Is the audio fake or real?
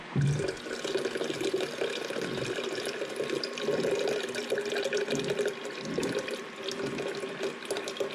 real